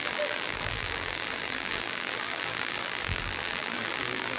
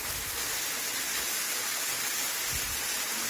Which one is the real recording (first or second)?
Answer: second